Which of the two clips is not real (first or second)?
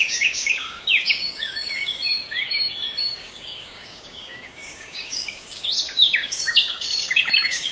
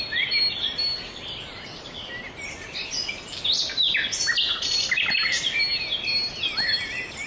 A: first